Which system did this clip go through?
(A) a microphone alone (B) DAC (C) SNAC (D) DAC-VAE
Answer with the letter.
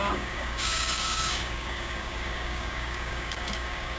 B